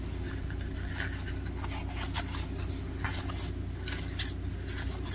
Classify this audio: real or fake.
real